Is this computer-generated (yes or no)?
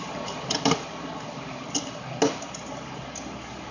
no